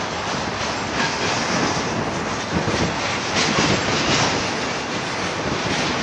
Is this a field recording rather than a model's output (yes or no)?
yes